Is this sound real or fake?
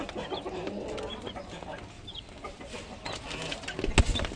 real